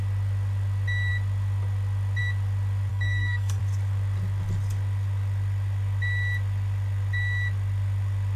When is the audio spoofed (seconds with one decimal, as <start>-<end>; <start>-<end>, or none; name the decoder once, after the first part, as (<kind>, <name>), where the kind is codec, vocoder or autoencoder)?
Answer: 2.9-3.6 (codec, SNAC)